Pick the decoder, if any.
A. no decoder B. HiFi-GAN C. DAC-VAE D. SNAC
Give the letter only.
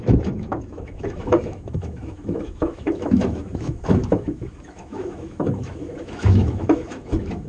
C